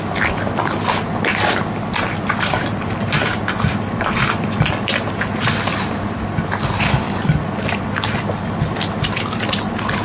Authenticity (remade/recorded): recorded